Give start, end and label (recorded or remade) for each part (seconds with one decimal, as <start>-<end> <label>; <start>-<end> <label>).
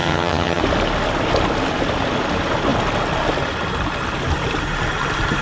0.0-0.6 remade; 0.6-5.4 recorded